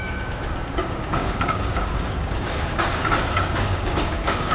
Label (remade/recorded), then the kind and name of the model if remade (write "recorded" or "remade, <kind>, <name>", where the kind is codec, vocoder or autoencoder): remade, codec, DAC